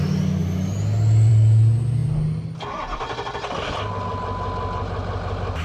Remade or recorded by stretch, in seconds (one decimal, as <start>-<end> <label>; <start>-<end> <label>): 0.0-5.6 recorded